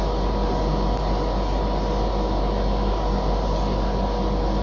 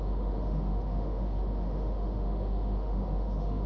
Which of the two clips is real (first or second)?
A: first